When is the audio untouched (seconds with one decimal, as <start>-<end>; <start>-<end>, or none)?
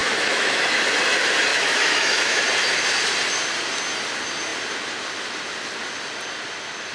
0.8-1.5; 2.4-6.9